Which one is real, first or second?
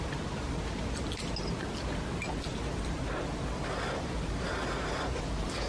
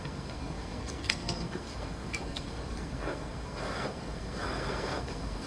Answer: first